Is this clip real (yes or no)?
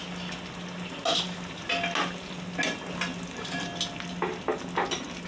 yes